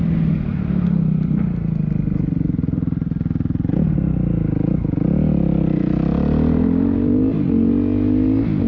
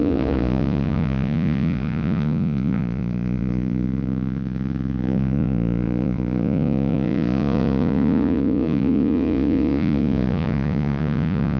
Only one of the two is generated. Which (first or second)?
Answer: second